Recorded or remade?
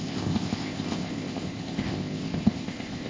remade